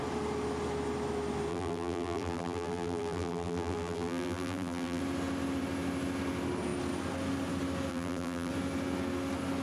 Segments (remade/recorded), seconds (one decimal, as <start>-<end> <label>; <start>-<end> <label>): 0.0-1.5 recorded; 1.5-5.0 remade; 5.0-7.9 recorded; 7.9-8.5 remade; 8.5-9.6 recorded